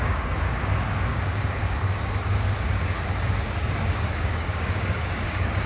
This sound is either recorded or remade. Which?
remade